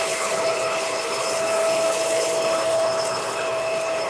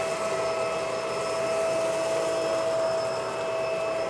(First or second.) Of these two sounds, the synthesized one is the first